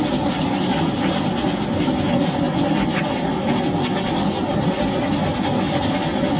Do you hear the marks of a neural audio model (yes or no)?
no